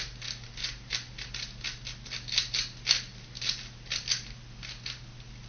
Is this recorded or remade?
recorded